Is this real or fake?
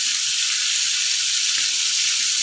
real